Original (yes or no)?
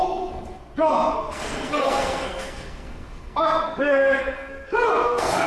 no